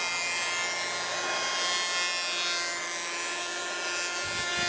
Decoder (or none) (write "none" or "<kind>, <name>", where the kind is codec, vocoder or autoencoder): none